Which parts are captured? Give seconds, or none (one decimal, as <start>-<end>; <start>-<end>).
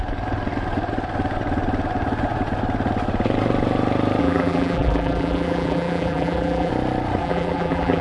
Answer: 0.0-4.2; 6.7-7.2